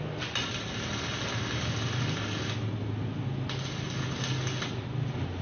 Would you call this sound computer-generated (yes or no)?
no